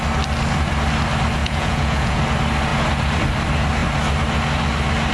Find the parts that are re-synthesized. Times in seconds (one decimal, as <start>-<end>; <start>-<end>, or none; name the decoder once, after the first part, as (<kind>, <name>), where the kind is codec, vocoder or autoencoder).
1.4-2.2 (vocoder, Vocos)